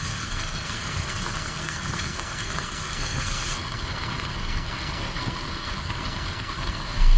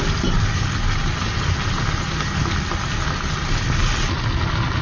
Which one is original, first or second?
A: second